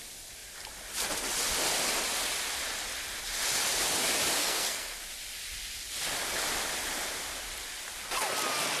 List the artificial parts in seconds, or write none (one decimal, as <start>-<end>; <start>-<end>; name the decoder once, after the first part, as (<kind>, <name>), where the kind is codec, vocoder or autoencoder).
4.4-5.0 (codec, SNAC)